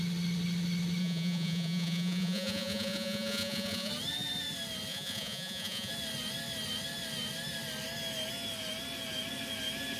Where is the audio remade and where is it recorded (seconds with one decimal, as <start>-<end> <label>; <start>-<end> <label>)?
0.0-1.0 recorded; 1.0-3.9 remade; 3.9-4.9 recorded; 4.9-5.9 remade; 5.9-10.0 recorded